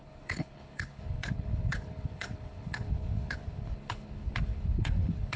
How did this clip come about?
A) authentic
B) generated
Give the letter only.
B